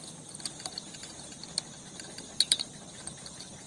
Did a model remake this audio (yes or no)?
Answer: no